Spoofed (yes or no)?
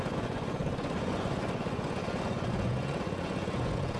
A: yes